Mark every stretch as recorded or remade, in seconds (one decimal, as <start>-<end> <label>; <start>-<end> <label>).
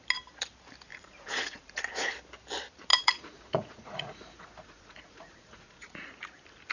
0.0-0.9 recorded; 0.9-2.1 remade; 2.1-2.9 recorded; 2.9-6.1 remade; 6.1-6.7 recorded